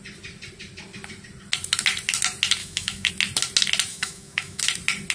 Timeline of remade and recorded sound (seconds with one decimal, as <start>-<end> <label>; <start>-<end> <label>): 0.0-2.6 recorded; 2.6-3.1 remade; 3.1-3.9 recorded; 3.9-4.6 remade; 4.6-5.1 recorded